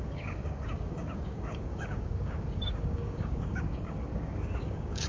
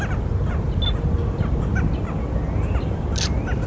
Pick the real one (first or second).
second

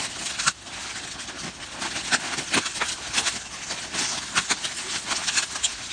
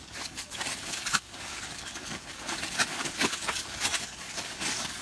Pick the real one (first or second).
first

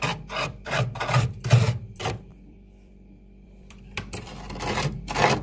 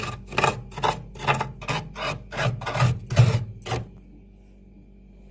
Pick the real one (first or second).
second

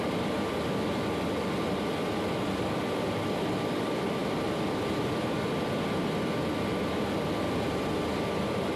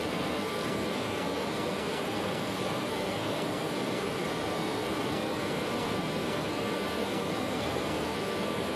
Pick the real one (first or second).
first